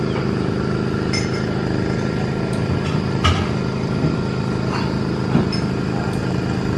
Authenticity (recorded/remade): recorded